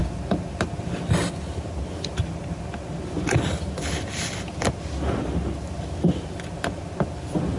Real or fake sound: real